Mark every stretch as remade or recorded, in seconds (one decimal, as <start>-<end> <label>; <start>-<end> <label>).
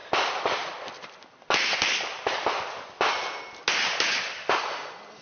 0.0-5.2 recorded